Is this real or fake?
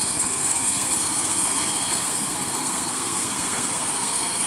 fake